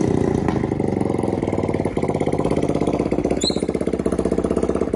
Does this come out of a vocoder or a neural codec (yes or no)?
no